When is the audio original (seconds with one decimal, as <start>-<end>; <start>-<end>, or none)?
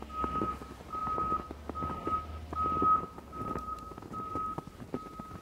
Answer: 0.0-5.4